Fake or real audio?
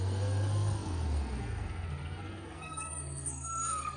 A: fake